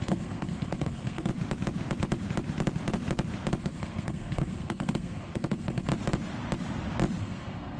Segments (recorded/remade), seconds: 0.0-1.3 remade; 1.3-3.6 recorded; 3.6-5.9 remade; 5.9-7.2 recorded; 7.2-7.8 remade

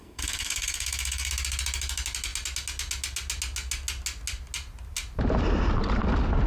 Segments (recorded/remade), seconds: 0.0-1.3 remade; 1.3-6.5 recorded

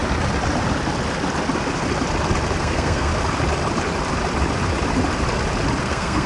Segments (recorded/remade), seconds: 0.0-2.6 recorded; 2.6-3.1 remade; 3.1-5.8 recorded; 5.8-6.3 remade

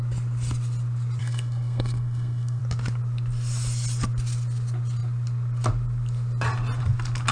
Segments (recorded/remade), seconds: 0.0-1.2 recorded; 1.2-2.6 remade; 2.6-7.3 recorded

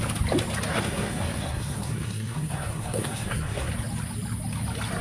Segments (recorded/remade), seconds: 0.0-0.7 recorded; 0.7-3.7 remade; 3.7-5.0 recorded